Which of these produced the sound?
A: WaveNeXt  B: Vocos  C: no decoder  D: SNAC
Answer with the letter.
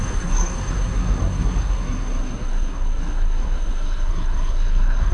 D